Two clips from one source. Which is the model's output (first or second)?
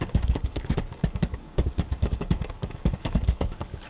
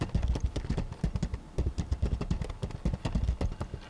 first